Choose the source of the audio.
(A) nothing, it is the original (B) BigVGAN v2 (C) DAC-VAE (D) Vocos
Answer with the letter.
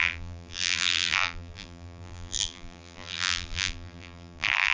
B